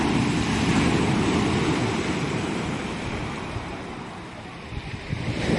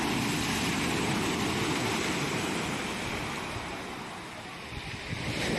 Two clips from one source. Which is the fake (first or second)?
first